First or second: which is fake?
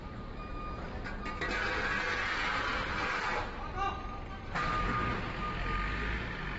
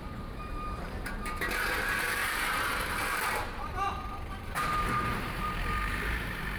second